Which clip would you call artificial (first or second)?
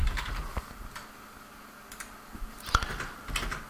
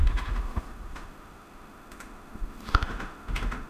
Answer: second